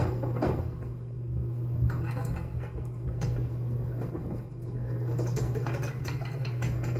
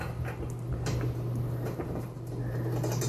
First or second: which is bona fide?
second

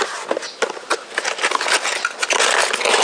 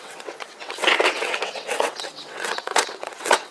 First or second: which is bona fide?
first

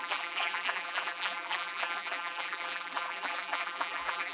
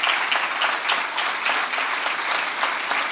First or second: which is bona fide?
second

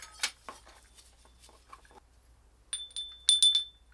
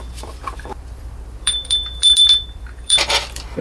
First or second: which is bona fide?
first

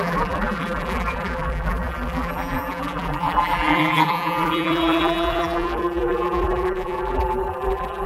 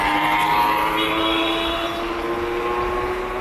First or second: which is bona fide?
second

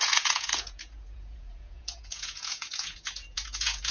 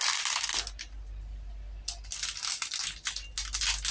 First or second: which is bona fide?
second